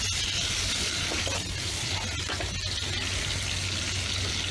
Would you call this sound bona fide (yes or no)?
yes